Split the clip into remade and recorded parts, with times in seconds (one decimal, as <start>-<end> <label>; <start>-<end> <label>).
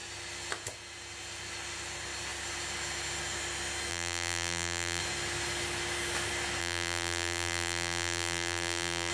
0.0-3.9 recorded; 3.9-5.0 remade; 5.0-6.6 recorded; 6.6-9.1 remade